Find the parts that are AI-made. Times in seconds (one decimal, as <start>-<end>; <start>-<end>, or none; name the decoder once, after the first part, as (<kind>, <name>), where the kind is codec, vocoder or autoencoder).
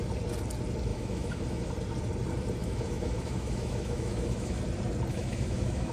0.9-1.7 (autoencoder, DAC-VAE); 2.6-4.6; 5.1-5.9